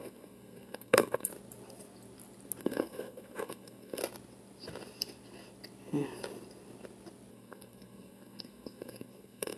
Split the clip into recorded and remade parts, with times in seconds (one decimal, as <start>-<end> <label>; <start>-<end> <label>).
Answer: 0.0-1.3 remade; 1.3-2.6 recorded; 2.6-4.0 remade; 4.0-7.3 recorded; 7.3-9.6 remade